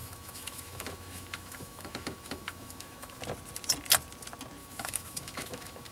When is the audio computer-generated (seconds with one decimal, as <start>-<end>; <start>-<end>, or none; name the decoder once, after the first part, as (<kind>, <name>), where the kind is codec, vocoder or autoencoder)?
0.0-3.2 (autoencoder, DAC-VAE); 4.6-5.9